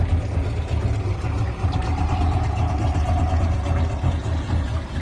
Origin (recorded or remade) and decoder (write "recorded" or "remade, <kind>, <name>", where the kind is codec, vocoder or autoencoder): recorded